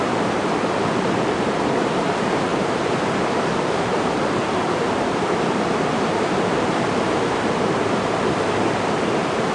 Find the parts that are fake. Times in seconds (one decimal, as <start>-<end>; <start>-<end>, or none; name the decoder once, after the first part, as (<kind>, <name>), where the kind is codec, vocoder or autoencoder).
0.0-9.5 (vocoder, BigVGAN v2)